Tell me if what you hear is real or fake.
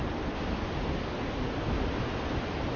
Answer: real